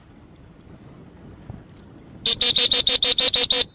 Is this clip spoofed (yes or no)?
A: no